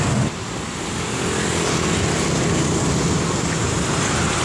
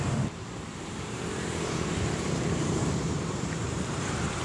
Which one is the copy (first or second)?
second